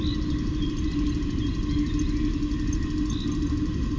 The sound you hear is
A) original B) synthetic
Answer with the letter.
A